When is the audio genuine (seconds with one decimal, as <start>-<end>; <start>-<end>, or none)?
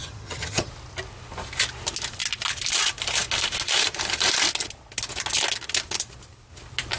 0.7-7.0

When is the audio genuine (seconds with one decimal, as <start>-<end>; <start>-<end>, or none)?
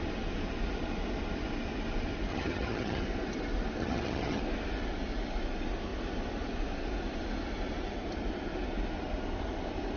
0.0-2.3; 3.0-3.8; 4.4-10.0